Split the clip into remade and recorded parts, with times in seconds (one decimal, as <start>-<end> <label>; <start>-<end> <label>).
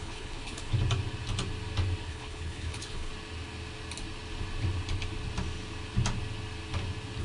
0.0-0.7 remade; 0.7-2.0 recorded; 2.0-3.1 remade; 3.1-7.2 recorded